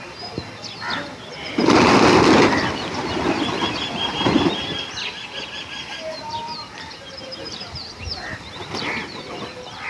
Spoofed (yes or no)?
yes